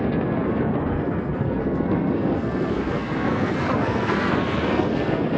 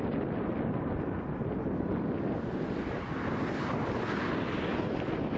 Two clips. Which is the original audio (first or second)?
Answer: second